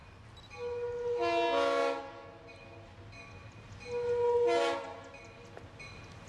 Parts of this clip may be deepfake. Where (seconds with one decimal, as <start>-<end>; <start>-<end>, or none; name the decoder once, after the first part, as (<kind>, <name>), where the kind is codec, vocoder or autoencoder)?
none